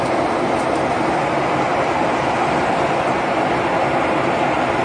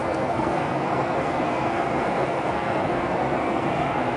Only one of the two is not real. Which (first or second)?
second